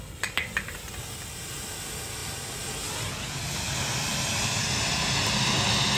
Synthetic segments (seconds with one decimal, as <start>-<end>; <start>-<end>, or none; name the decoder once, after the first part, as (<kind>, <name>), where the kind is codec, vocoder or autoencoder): none